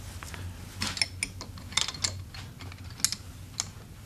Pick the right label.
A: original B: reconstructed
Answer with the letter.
A